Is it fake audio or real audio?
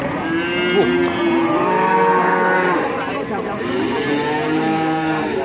real